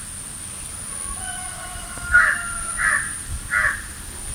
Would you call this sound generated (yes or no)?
no